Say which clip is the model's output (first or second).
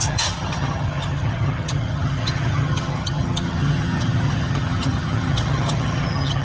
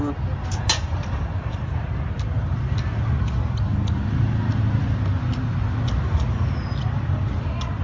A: first